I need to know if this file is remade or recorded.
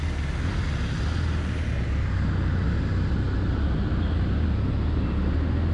recorded